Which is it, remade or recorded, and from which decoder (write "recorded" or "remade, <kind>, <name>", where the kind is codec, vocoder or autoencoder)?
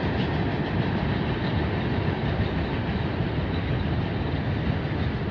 recorded